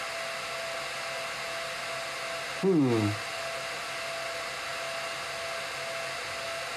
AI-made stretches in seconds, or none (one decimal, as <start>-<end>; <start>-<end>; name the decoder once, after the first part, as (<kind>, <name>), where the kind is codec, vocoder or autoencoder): none